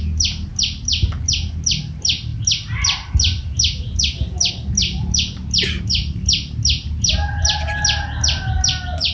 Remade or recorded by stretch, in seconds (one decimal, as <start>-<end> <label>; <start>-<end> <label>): 0.0-9.1 recorded